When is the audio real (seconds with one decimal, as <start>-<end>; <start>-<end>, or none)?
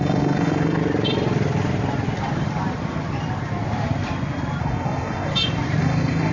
0.8-4.6; 5.3-5.8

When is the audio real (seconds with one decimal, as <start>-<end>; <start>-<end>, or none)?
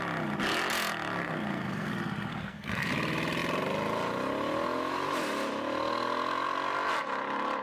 0.0-1.2; 1.9-2.3; 2.9-7.6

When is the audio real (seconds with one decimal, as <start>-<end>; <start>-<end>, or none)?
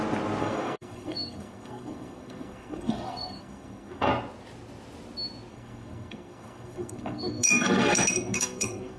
0.0-0.4; 4.1-5.5